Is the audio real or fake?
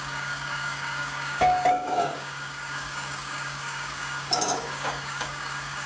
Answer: fake